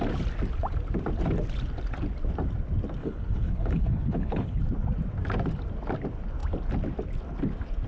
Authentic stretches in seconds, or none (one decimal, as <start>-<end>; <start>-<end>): 0.0-3.0; 4.6-7.9